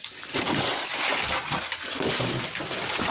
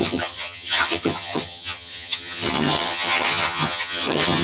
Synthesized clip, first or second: second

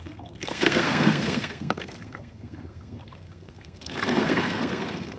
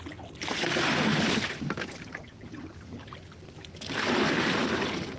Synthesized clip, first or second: first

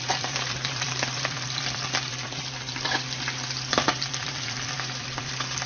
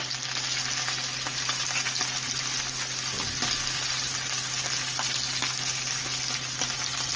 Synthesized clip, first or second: first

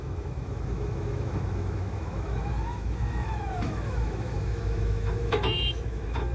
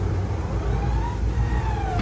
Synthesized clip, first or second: first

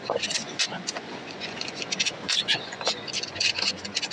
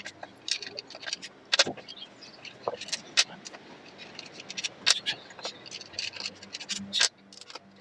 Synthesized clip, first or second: first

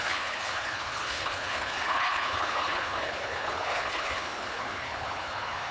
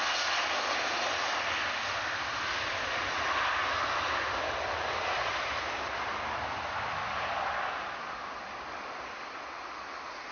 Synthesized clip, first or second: first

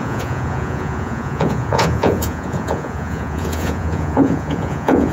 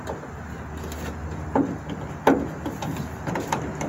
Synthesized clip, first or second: first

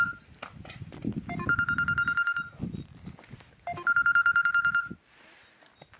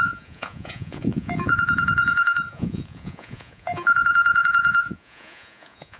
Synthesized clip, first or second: second